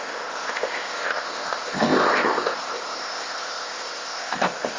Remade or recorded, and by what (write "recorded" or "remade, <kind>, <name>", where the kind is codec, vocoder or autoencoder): remade, codec, ZipCodec